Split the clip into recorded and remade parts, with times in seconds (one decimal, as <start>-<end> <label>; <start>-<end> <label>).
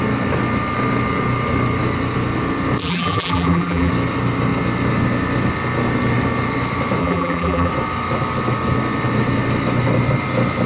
0.0-2.8 recorded; 2.8-3.9 remade; 3.9-7.0 recorded; 7.0-7.7 remade; 7.7-10.7 recorded